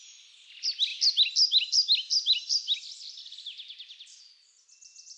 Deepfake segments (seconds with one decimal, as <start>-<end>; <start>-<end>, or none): none